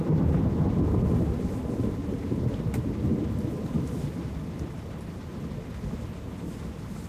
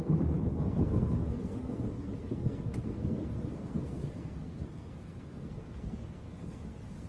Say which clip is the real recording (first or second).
first